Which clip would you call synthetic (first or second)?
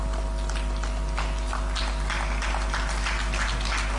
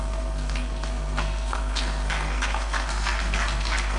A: second